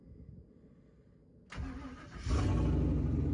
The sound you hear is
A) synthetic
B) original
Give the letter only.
B